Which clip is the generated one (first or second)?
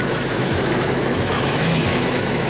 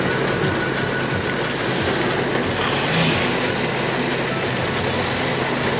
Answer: first